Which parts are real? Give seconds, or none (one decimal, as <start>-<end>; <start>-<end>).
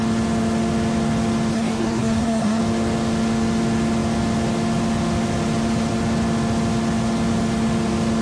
0.0-1.5; 2.6-8.2